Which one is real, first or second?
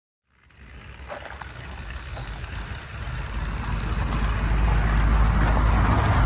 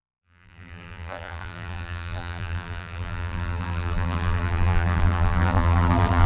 first